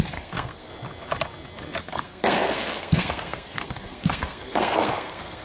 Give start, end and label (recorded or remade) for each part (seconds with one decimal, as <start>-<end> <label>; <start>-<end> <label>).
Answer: 0.0-0.7 remade; 0.7-1.8 recorded; 1.8-5.4 remade